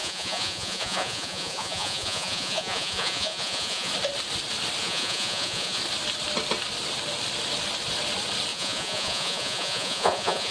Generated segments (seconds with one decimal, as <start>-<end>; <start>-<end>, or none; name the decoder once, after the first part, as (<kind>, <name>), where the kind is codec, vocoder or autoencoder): 0.0-3.9 (vocoder, Vocos); 4.8-5.8; 8.5-10.5